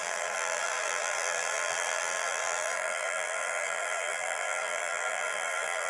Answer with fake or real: fake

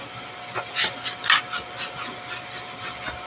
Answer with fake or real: real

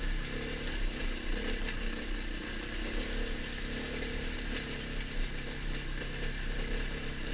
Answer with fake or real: real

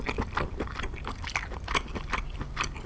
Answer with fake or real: real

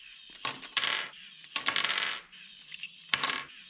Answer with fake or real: real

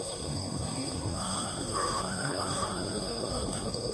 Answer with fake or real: fake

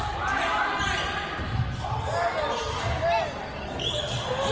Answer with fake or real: real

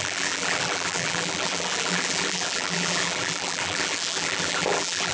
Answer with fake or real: fake